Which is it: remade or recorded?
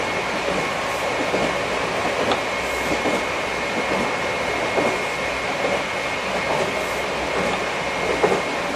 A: recorded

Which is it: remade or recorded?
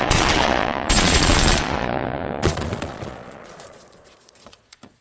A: remade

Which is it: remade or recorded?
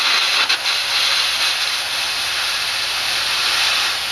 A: recorded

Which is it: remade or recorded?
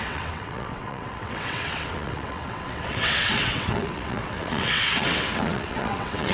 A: remade